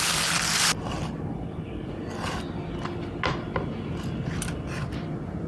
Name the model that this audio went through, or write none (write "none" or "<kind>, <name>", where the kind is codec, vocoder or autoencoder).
none